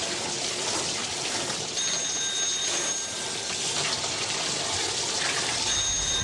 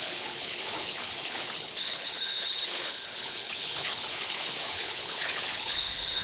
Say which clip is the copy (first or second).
second